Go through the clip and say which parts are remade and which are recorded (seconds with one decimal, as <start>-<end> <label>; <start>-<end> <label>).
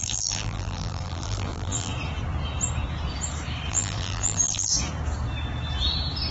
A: 0.0-1.9 remade; 1.9-3.7 recorded; 3.7-4.7 remade; 4.7-6.3 recorded